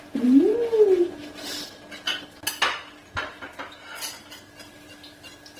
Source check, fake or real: real